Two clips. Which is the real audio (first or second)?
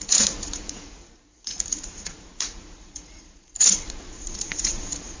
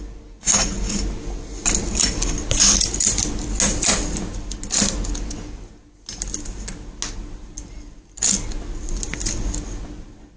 second